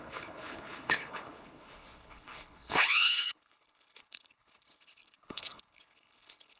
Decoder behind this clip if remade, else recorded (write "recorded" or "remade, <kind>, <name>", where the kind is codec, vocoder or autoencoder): remade, codec, HILCodec